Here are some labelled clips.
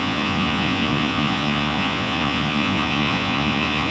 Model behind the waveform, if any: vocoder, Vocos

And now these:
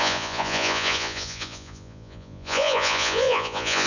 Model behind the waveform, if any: vocoder, Vocos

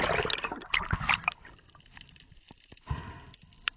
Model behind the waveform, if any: none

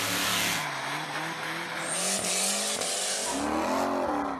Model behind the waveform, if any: none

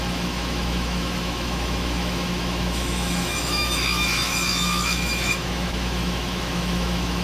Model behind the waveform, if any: autoencoder, DAC-VAE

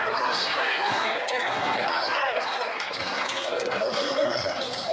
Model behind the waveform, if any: codec, SNAC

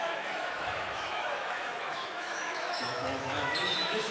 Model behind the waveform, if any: autoencoder, DAC-VAE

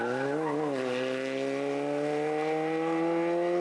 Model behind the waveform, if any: none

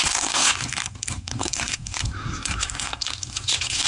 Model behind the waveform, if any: codec, SNAC